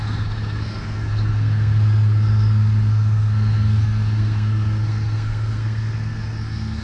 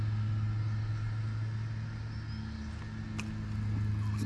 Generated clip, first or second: first